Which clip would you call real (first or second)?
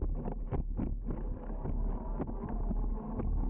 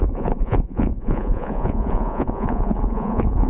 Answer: first